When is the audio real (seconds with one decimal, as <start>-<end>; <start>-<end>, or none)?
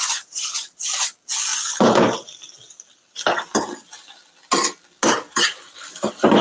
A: 0.0-6.4